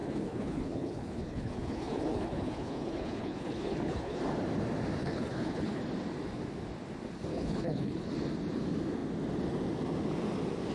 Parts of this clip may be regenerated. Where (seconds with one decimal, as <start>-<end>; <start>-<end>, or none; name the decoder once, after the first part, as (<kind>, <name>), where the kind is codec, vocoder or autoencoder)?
0.0-4.2 (codec, HILCodec); 5.0-5.8; 7.3-8.1